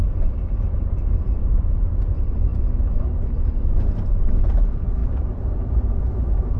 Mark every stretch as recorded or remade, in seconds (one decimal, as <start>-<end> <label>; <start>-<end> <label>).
0.0-0.6 recorded; 0.6-2.5 remade; 2.5-3.6 recorded; 3.6-6.6 remade